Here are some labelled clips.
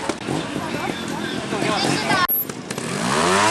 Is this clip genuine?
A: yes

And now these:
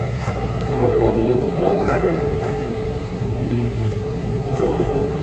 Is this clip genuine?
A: no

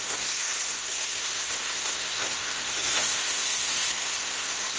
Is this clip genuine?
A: no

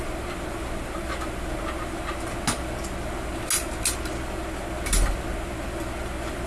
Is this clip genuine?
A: yes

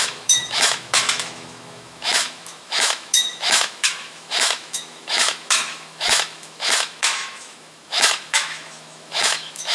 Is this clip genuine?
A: no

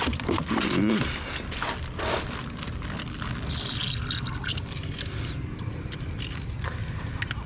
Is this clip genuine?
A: yes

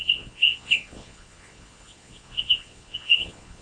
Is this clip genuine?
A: no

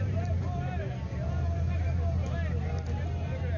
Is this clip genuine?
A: yes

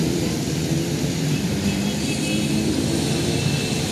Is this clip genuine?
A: no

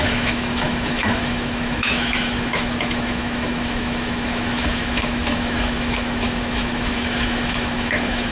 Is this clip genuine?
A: no